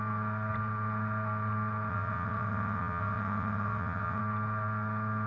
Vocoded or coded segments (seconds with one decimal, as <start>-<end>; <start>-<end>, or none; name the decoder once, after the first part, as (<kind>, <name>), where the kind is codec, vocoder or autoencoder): 1.9-4.2 (vocoder, WaveNeXt)